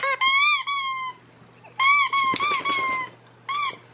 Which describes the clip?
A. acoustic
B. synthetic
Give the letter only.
A